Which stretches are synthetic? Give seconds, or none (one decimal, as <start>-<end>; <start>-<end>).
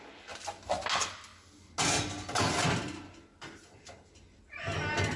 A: none